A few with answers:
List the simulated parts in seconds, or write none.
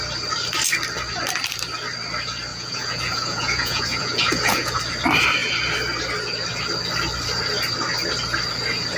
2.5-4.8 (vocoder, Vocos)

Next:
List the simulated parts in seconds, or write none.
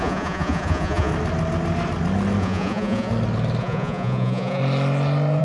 0.0-1.1 (vocoder, Vocos); 2.4-3.1; 3.6-4.6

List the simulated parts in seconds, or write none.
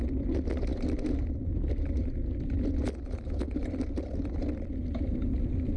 none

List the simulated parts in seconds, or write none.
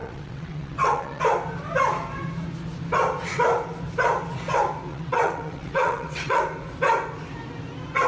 0.0-1.2 (vocoder, WaveNeXt); 4.9-6.4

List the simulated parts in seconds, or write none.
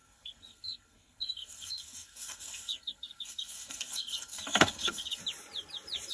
0.0-5.2 (codec, SNAC)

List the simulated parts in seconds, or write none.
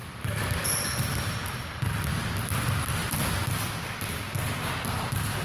0.0-1.8 (vocoder, BigVGAN v2); 3.0-4.4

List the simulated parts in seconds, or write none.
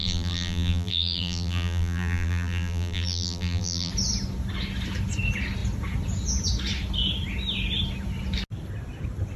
0.0-3.9 (vocoder, BigVGAN v2)